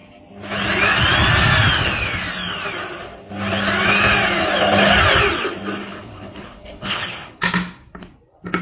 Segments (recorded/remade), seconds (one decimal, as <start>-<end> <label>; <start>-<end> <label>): 0.0-5.8 recorded; 5.8-7.4 remade; 7.4-8.6 recorded